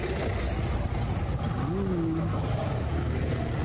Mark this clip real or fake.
real